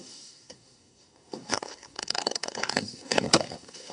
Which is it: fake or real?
fake